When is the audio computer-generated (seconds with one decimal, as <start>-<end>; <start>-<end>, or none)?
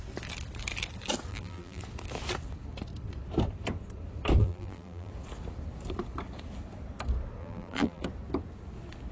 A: 1.3-1.8; 4.4-5.1; 7.4-8.0